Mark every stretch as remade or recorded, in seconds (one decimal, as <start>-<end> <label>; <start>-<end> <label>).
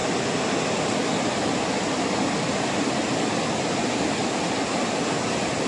0.0-5.7 recorded